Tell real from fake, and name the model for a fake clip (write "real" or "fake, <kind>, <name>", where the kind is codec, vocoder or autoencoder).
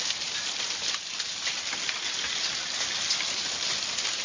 real